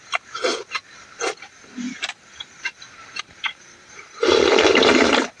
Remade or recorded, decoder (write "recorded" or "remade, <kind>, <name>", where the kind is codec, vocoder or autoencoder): remade, vocoder, BigVGAN v2